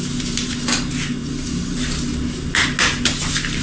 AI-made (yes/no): no